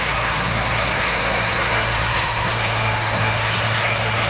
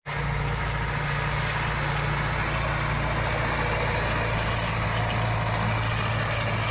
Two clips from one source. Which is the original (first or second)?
second